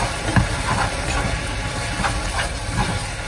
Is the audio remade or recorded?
recorded